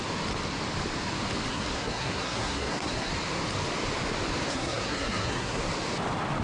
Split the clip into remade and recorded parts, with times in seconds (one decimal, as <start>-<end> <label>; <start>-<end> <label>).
0.0-1.5 recorded; 1.5-3.1 remade; 3.1-4.5 recorded; 4.5-5.6 remade; 5.6-6.4 recorded